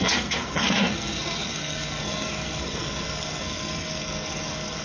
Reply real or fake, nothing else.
fake